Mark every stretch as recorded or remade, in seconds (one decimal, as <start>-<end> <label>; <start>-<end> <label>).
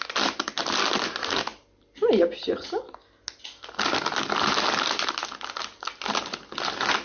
0.0-7.0 recorded